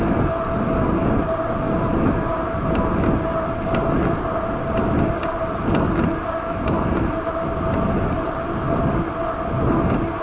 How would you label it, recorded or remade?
recorded